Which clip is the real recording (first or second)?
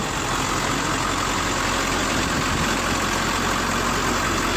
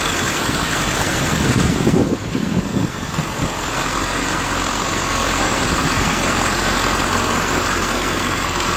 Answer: first